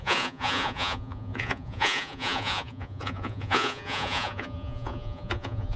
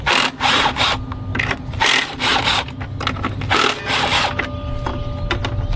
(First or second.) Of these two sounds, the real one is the second